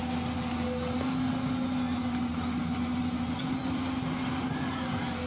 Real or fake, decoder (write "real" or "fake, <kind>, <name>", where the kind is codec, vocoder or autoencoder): real